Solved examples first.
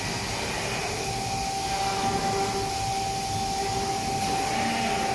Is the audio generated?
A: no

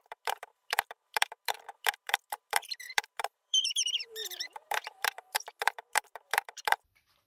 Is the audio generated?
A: yes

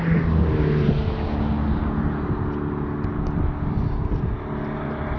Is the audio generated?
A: no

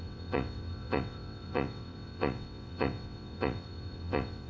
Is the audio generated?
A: yes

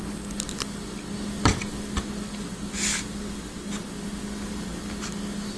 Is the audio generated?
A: no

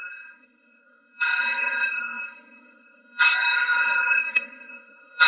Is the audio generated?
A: yes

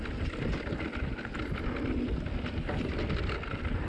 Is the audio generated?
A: no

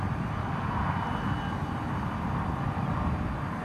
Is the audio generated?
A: no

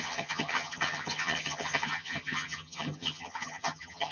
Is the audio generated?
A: yes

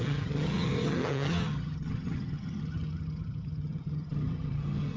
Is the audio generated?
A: yes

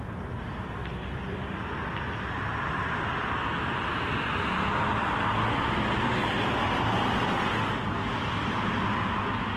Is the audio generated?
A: no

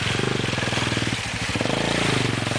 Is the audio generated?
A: no